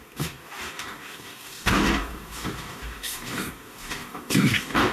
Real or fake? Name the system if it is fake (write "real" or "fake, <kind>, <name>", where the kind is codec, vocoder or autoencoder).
fake, codec, DAC